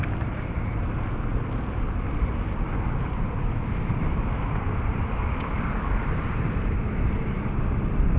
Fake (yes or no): yes